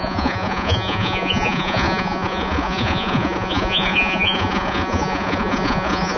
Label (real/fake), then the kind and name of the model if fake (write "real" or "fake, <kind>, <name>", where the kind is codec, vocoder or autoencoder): fake, vocoder, Vocos